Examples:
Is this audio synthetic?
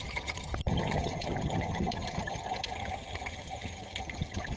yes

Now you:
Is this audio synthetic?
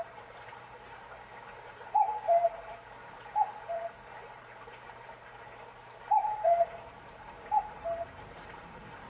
yes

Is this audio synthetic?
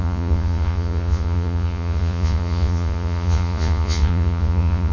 yes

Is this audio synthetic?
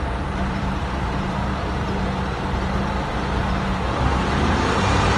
yes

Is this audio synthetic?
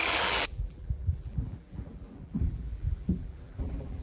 yes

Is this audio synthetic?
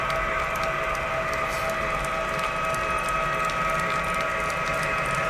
no